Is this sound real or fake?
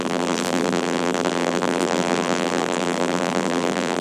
fake